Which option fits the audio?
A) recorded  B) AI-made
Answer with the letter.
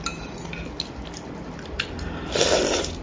A